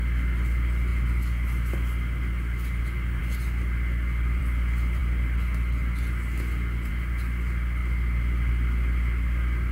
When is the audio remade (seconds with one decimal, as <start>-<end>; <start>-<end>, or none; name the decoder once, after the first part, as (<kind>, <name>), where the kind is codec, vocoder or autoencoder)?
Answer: none

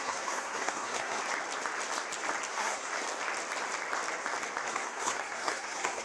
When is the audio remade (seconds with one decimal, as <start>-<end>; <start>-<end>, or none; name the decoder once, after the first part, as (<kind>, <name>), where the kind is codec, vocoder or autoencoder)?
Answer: 0.0-1.2 (codec, SNAC); 2.5-2.9; 4.7-6.0

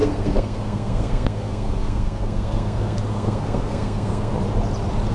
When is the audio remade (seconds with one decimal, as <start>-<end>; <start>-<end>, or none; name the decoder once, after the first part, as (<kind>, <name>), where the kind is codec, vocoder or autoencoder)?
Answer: 0.0-4.3 (codec, SNAC)